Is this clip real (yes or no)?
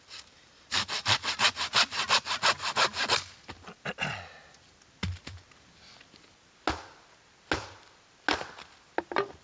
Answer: yes